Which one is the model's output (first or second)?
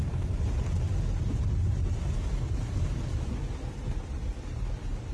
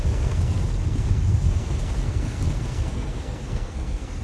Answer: second